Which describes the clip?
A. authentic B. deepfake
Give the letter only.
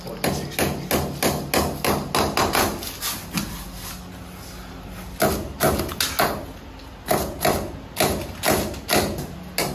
A